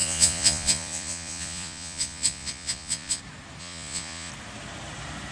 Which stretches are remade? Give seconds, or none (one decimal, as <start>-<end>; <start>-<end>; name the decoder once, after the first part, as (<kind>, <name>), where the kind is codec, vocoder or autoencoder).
0.0-3.2 (vocoder, Vocos); 3.6-4.3